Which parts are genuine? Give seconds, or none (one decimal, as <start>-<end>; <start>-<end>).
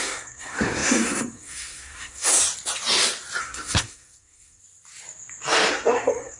2.4-3.4; 4.6-5.7